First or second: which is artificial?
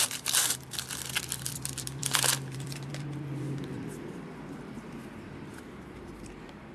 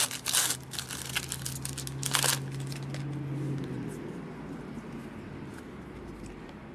first